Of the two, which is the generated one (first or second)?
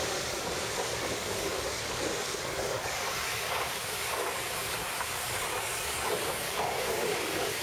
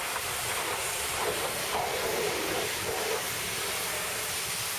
first